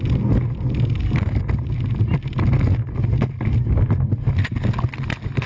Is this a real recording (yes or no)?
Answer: yes